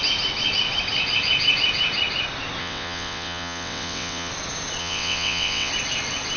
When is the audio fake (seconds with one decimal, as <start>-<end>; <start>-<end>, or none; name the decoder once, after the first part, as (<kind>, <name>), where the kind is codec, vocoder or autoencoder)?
2.6-4.3 (vocoder, WaveNeXt); 4.8-5.7